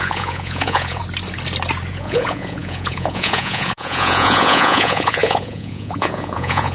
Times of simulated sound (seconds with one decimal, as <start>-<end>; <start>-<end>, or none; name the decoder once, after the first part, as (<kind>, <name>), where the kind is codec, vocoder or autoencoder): 0.0-1.0 (vocoder, Vocos); 1.9-6.7